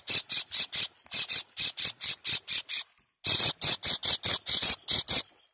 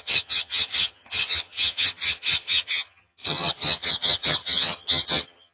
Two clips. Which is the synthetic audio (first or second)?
second